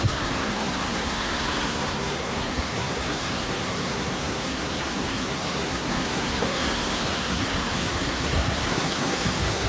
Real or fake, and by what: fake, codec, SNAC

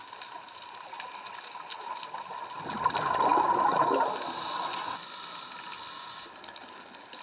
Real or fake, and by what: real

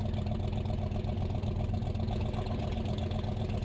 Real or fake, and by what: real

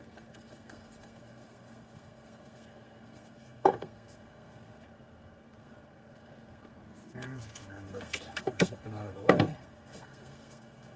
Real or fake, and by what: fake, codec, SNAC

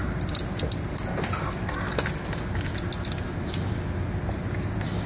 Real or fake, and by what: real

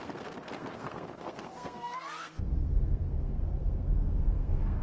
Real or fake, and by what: fake, codec, SNAC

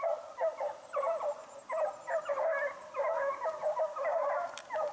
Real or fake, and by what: real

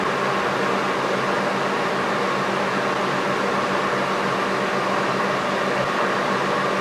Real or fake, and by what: real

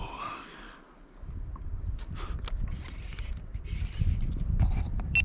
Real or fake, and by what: real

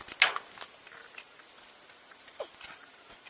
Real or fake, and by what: real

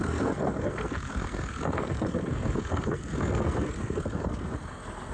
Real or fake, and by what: fake, codec, SNAC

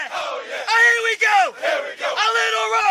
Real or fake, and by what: real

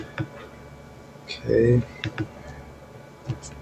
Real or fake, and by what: real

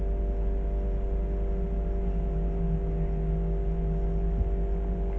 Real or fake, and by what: real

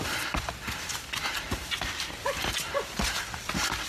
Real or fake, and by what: real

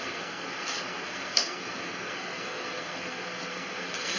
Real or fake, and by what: fake, codec, SNAC